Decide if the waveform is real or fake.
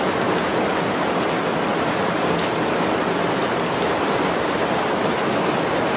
real